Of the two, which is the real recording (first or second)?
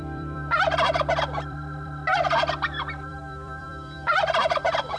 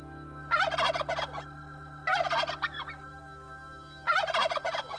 second